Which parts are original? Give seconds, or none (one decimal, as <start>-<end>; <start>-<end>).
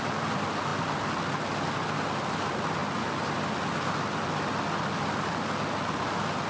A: 0.0-6.5